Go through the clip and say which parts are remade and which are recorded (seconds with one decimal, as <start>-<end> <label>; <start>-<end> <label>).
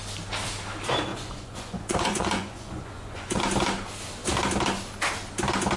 0.0-1.1 recorded; 1.1-3.4 remade; 3.4-5.8 recorded